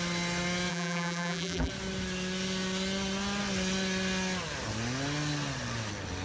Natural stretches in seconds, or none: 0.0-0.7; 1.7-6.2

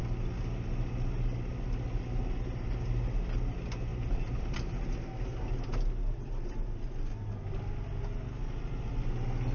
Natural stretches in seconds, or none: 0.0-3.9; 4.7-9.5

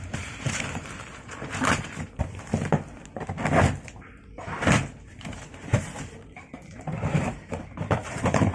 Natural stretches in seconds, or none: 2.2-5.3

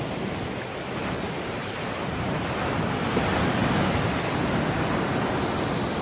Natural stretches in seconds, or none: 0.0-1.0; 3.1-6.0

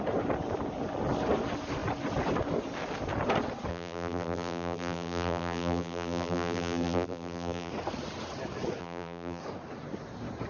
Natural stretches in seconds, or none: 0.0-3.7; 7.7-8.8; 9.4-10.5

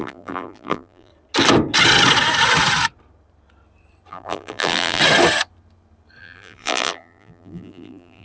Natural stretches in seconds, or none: 1.1-4.1; 5.0-6.2

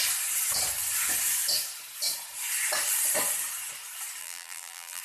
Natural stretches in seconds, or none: 0.0-4.2

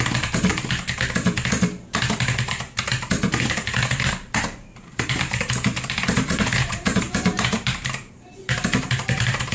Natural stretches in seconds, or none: 0.5-3.7